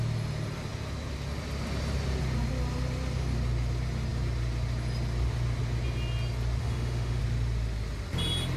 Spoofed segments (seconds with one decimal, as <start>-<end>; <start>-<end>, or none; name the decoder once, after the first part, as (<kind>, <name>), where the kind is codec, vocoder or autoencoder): 6.6-7.2 (autoencoder, DAC-VAE)